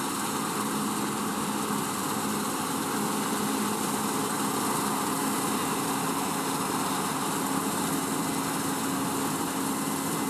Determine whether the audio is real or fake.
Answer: real